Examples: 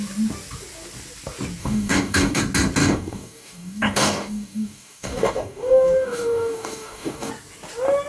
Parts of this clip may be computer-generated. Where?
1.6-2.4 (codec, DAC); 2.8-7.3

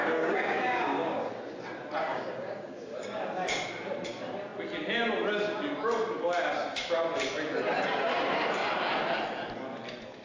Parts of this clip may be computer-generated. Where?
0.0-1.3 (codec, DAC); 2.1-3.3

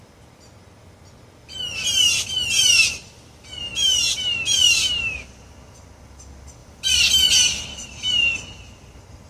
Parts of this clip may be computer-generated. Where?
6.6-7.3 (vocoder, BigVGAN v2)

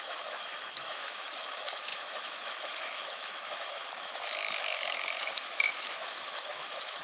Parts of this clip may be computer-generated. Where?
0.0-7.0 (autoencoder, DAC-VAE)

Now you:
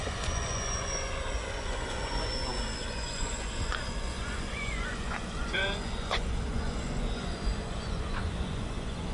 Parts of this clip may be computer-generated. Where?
0.0-9.1 (vocoder, Vocos)